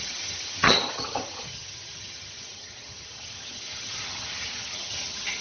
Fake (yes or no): yes